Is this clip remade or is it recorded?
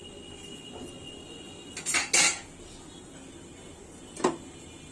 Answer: recorded